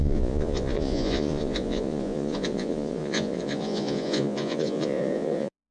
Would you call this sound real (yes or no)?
no